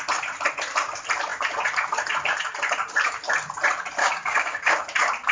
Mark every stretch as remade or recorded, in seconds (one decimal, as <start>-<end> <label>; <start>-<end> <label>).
0.0-4.0 recorded; 4.0-4.8 remade; 4.8-5.3 recorded